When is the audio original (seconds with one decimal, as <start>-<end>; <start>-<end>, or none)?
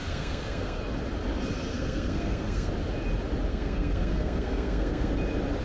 0.8-1.7; 2.7-3.5; 5.1-5.6